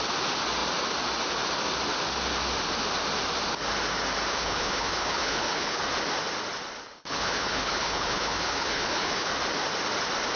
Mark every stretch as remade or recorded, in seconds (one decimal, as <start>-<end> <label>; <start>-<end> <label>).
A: 0.0-4.3 recorded; 4.3-5.8 remade; 5.8-6.8 recorded; 6.8-9.3 remade; 9.3-10.4 recorded